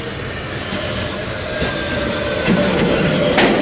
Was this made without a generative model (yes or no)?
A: yes